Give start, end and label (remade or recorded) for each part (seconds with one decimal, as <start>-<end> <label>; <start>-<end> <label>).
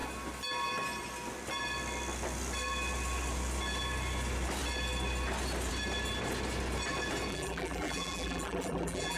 0.0-7.3 recorded; 7.3-9.2 remade